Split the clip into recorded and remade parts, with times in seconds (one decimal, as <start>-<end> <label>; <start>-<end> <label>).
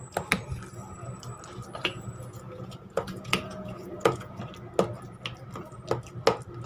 0.0-1.8 recorded; 1.8-4.4 remade; 4.4-6.7 recorded